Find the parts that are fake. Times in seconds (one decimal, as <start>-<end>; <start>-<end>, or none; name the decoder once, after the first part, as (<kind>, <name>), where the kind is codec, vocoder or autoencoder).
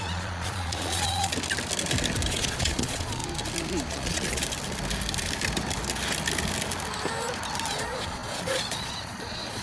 0.0-1.3 (vocoder, Vocos); 2.3-3.2; 3.9-4.4; 7.7-9.6